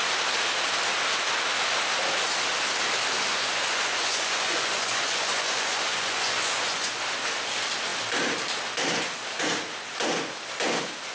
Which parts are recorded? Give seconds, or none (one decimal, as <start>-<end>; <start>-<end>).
0.0-3.3; 6.9-11.1